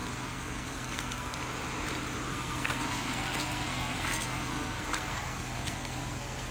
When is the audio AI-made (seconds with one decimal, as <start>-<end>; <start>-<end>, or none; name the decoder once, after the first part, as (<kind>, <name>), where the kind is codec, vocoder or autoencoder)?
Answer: 0.0-1.4 (codec, SNAC); 2.3-6.5